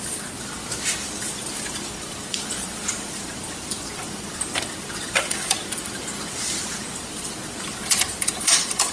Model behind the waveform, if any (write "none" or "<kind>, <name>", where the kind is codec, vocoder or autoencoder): vocoder, BigVGAN v2